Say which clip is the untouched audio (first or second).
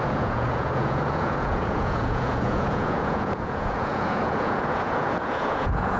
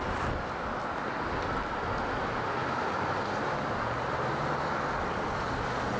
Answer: second